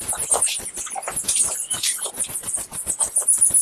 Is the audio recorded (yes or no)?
yes